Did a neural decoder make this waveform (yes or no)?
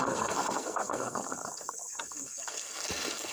yes